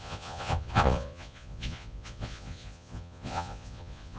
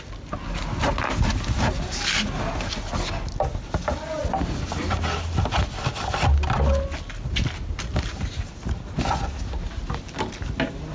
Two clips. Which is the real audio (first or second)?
second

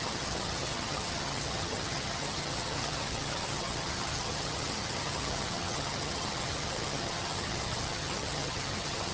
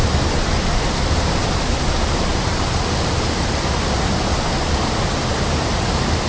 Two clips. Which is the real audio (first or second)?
second